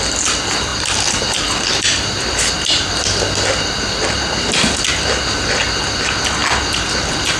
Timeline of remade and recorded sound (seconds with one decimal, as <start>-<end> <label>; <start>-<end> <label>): 0.0-7.4 recorded